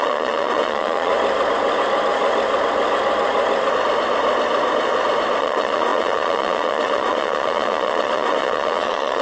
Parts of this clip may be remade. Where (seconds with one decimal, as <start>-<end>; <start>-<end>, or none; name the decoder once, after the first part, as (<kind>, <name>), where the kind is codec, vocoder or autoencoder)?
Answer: 0.0-1.1 (vocoder, Vocos); 5.4-9.2